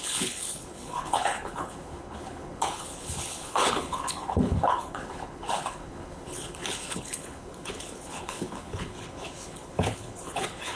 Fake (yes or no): yes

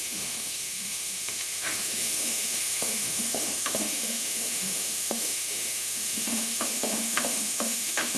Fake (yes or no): yes